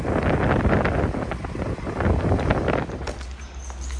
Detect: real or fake real